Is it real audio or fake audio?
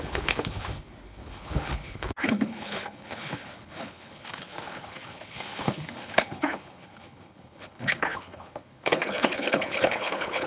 fake